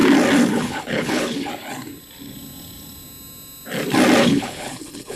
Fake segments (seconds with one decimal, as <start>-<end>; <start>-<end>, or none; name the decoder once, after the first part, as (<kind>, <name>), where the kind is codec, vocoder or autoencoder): 0.5-1.5 (codec, HILCodec); 4.2-5.2